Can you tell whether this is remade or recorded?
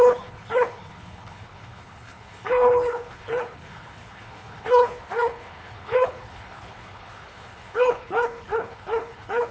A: remade